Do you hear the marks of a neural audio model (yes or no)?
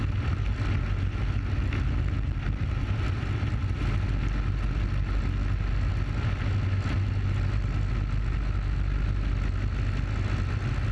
no